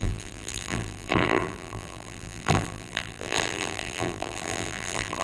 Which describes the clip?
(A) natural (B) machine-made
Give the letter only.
B